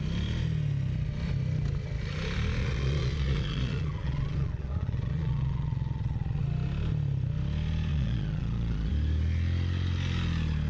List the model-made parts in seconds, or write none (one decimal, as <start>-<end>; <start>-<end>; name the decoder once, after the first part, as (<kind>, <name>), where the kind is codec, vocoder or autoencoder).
2.6-6.4 (vocoder, Vocos); 7.9-8.9